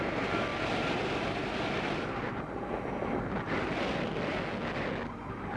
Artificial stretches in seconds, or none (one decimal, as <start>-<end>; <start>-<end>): none